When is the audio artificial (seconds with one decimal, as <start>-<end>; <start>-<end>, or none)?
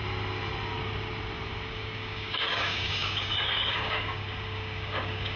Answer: 1.7-5.4